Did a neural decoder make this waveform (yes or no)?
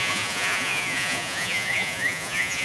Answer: yes